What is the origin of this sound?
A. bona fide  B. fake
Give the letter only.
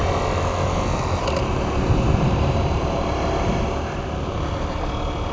A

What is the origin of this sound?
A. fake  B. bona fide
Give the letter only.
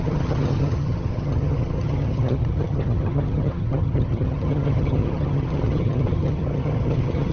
A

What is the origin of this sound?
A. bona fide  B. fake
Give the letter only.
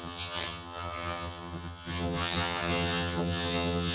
B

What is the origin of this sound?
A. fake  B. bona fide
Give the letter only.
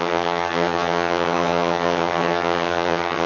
A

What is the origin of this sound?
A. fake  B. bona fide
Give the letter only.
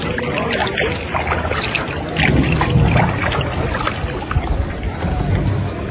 B